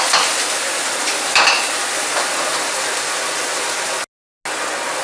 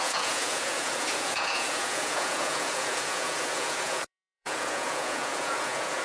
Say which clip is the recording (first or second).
first